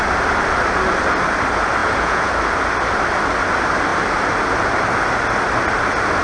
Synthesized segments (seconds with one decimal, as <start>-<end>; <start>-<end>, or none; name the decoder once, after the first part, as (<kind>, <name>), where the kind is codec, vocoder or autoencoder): 1.8-2.3 (vocoder, Vocos)

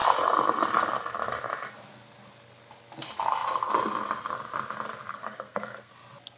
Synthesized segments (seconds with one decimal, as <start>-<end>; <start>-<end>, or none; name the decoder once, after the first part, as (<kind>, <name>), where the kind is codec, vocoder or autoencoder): 5.1-5.9 (codec, SNAC)

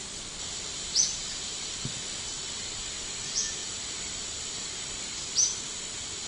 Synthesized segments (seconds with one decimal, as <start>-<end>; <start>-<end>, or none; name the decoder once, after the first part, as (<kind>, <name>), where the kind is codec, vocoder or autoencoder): none

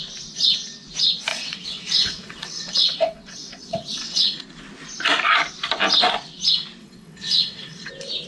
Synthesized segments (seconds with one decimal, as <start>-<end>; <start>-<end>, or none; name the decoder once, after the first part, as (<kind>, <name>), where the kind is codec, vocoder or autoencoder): 1.3-4.4 (vocoder, WaveNeXt); 6.8-7.9